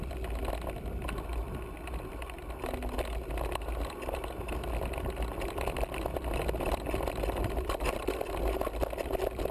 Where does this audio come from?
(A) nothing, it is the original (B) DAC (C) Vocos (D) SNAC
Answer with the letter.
A